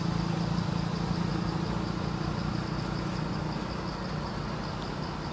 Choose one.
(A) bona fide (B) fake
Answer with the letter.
A